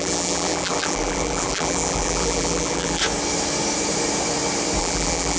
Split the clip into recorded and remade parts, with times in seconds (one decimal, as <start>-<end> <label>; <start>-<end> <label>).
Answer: 0.0-3.0 remade; 3.0-4.8 recorded; 4.8-5.4 remade